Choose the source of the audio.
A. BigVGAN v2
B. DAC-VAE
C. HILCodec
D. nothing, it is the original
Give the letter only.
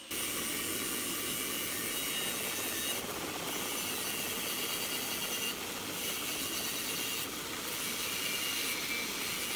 D